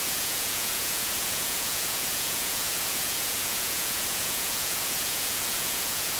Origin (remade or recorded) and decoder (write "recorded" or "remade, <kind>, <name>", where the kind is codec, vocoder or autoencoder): remade, vocoder, Vocos